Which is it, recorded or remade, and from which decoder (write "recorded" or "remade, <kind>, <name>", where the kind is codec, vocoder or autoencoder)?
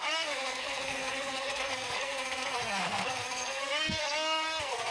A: remade, codec, SNAC